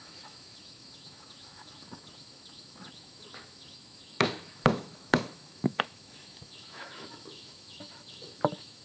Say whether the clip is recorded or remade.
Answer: remade